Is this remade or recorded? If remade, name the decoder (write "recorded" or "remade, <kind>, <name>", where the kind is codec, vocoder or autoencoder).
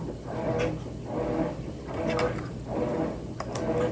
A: recorded